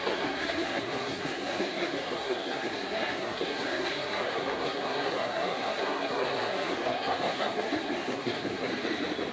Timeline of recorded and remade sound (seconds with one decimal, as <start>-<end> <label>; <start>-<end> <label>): 0.0-8.7 remade; 8.7-9.3 recorded